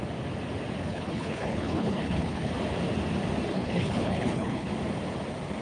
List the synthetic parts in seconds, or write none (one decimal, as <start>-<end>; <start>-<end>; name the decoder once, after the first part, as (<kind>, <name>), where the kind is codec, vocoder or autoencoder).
0.8-2.5 (codec, HILCodec); 3.5-4.7